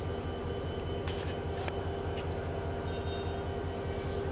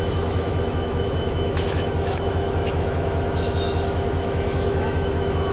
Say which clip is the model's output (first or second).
second